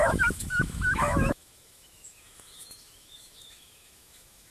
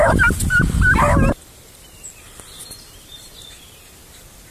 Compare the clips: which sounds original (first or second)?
second